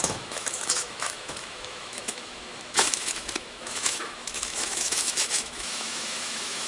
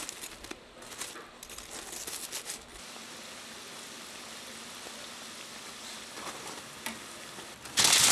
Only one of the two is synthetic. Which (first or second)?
first